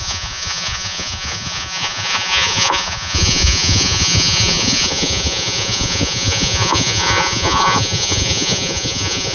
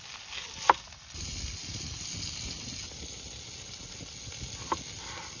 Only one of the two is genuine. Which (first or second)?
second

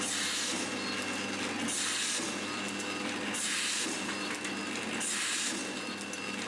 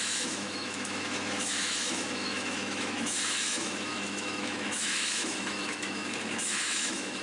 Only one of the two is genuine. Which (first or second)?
first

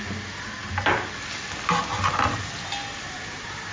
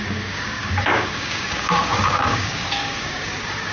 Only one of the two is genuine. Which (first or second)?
first